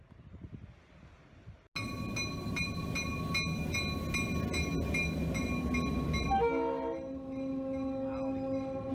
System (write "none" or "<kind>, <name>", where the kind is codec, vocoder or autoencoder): none